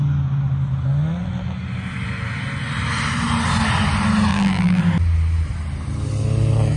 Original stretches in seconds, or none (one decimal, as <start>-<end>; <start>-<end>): 0.0-4.3; 4.8-6.8